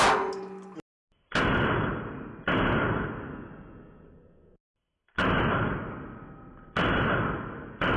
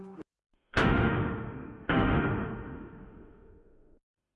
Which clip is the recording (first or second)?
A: first